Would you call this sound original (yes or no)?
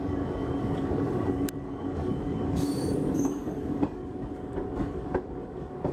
no